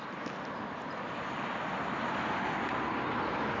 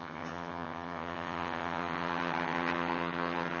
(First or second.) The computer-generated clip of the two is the second